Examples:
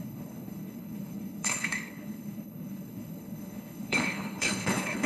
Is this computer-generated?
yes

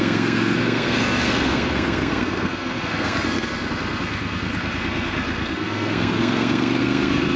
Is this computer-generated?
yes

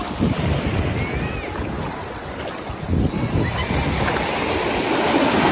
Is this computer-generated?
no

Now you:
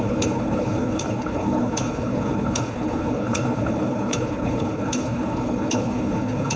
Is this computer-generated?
yes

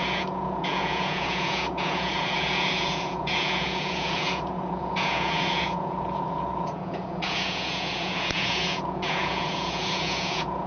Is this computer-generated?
yes